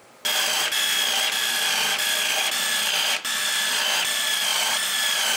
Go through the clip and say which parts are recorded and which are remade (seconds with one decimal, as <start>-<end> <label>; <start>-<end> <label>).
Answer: 0.0-5.4 recorded